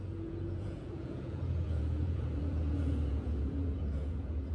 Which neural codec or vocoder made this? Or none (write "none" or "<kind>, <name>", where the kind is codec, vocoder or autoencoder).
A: vocoder, Vocos